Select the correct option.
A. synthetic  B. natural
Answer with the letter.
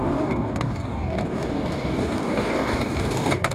A